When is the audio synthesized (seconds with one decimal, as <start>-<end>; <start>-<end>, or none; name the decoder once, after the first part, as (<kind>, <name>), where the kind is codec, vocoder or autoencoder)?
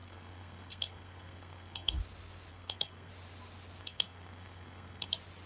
0.0-2.0 (codec, SNAC); 2.5-3.1; 3.8-5.1